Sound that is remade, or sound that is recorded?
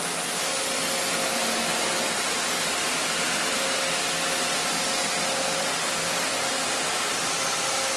recorded